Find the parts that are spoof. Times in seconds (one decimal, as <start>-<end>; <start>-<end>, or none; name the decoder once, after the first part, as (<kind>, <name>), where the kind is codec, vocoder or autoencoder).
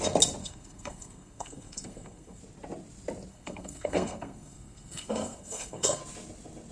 0.4-2.4 (codec, SNAC); 3.3-6.0